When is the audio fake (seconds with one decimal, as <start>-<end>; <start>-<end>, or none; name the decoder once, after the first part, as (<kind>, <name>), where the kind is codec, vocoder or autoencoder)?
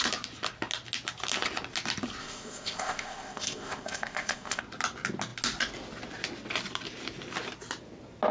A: 2.2-4.6 (codec, ZipCodec)